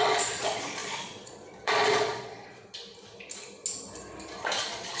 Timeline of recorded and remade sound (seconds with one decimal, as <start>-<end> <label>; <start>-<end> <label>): 0.0-2.8 remade; 2.8-4.4 recorded; 4.4-5.0 remade